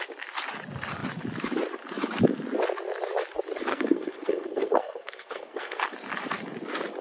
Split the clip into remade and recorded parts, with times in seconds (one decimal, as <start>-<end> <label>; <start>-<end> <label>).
0.0-3.7 recorded; 3.7-5.8 remade; 5.8-7.0 recorded